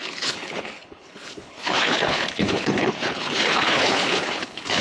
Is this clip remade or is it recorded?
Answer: remade